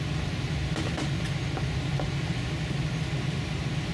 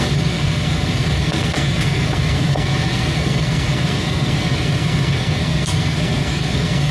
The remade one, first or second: second